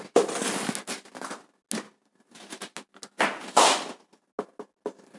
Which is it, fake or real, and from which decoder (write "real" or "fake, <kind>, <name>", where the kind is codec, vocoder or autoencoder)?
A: real